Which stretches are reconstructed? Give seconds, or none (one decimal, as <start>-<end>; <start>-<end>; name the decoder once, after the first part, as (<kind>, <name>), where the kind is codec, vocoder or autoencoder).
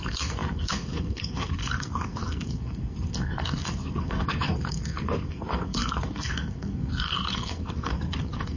0.0-8.6 (codec, SNAC)